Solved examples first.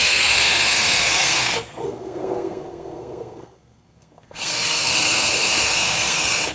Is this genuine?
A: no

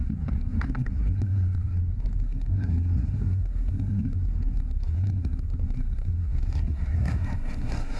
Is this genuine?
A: no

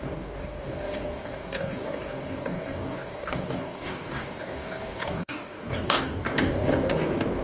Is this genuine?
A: no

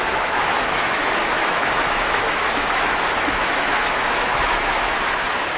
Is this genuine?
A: no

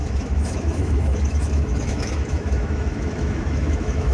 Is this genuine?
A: no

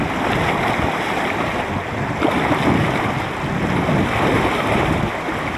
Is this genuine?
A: yes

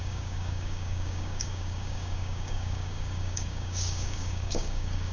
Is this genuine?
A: no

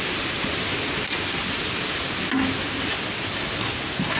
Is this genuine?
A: yes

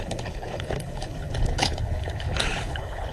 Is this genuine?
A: no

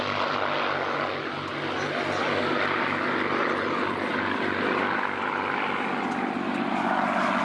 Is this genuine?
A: yes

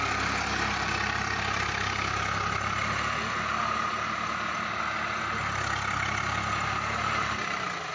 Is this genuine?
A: yes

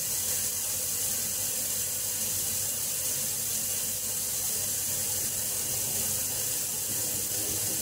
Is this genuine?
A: yes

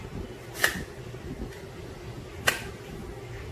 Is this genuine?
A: yes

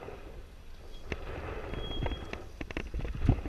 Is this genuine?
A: yes